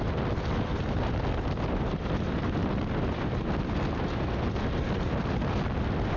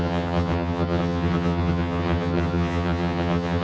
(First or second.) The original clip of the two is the first